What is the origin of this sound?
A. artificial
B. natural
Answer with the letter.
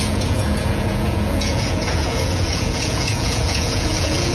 A